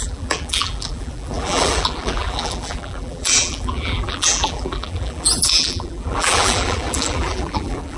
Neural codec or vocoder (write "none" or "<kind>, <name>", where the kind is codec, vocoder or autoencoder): vocoder, BigVGAN v2